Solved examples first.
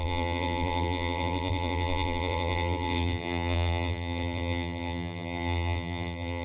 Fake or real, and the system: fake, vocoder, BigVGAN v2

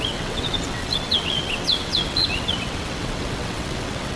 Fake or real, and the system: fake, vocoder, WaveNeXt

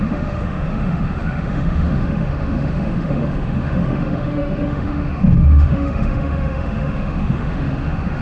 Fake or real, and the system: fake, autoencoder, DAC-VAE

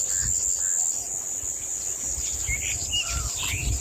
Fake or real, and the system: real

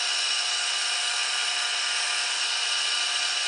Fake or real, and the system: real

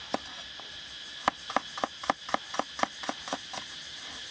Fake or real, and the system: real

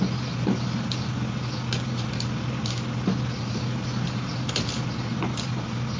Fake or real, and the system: real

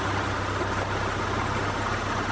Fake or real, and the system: real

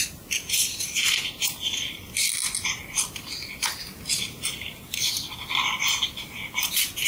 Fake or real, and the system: real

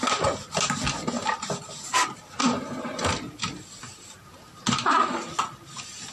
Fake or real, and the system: real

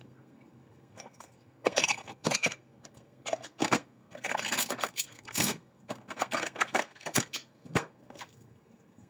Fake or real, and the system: fake, codec, SNAC